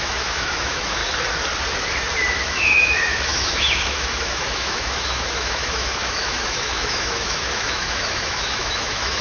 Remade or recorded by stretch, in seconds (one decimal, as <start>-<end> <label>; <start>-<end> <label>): 0.0-1.0 remade; 1.0-2.4 recorded; 2.4-9.2 remade